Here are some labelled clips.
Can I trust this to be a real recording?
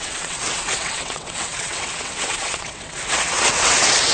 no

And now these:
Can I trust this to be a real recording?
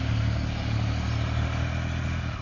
yes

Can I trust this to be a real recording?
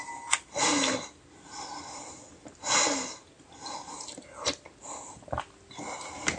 yes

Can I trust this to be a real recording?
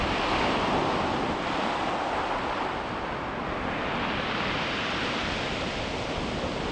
yes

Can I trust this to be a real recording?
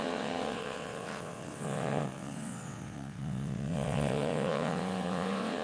no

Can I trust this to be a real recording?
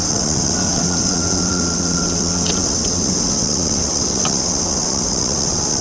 no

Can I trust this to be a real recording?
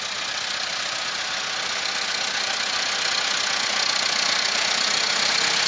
yes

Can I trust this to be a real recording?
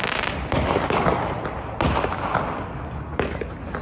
yes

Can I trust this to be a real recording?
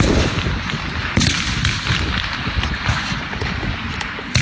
yes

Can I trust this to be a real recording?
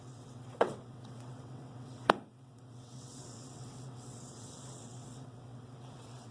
no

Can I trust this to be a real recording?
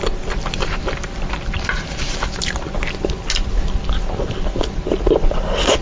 yes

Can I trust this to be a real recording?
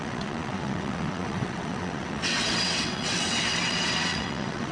no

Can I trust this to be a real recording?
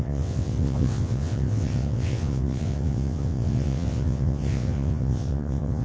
no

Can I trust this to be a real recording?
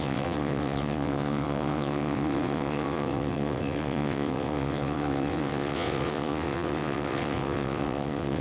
no